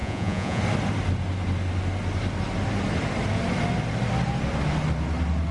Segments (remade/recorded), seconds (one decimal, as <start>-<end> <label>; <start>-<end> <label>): 0.0-0.6 remade; 0.6-5.5 recorded